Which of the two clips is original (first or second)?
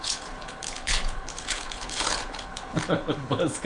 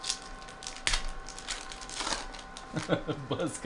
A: second